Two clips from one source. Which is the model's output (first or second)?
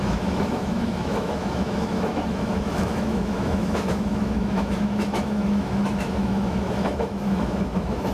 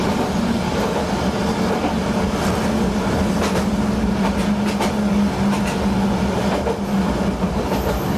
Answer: first